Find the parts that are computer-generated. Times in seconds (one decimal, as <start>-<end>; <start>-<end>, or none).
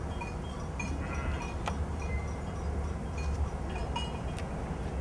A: none